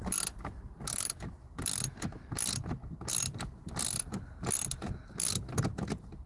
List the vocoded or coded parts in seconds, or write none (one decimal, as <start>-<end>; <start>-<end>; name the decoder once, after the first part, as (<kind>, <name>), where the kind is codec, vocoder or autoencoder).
none